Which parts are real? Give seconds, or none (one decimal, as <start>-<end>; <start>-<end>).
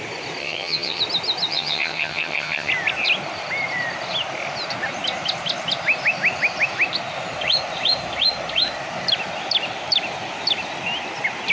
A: 0.0-0.4; 1.0-1.5; 2.7-11.5